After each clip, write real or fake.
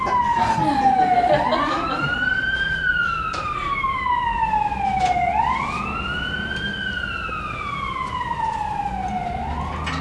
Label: real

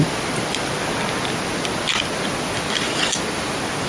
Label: real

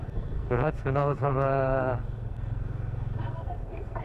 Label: fake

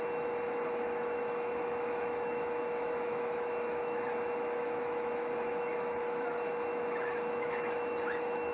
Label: fake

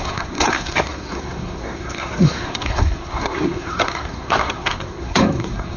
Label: fake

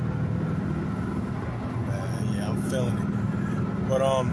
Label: real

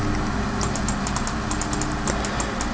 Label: real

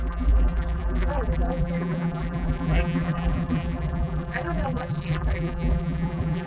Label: fake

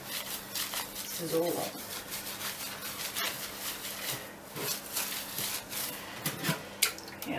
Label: real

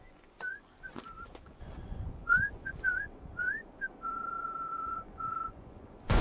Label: fake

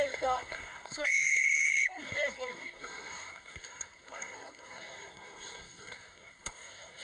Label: fake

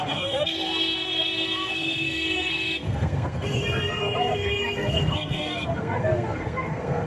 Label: fake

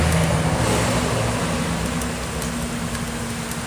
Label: real